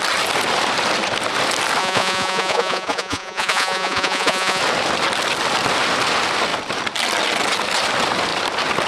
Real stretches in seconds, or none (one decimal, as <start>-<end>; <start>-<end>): 0.0-1.8; 4.6-8.9